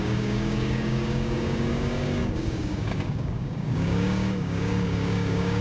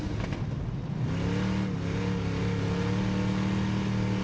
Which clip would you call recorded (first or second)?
second